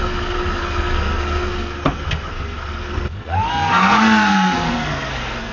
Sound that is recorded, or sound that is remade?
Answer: remade